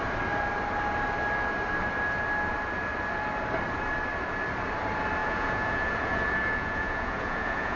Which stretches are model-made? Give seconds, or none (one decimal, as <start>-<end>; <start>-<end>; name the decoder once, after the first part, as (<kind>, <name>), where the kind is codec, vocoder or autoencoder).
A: 5.2-7.8 (vocoder, Vocos)